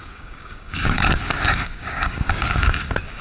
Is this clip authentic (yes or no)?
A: no